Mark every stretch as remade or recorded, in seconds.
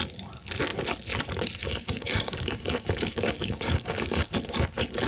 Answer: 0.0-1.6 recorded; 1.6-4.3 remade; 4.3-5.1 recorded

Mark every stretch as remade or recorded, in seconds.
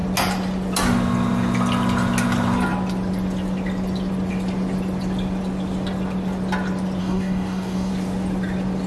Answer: 0.0-7.0 recorded; 7.0-7.9 remade; 7.9-8.9 recorded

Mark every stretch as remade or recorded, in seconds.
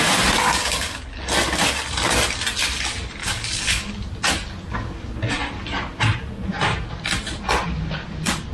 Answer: 0.0-0.4 recorded; 0.4-1.0 remade; 1.0-3.2 recorded; 3.2-3.9 remade; 3.9-8.5 recorded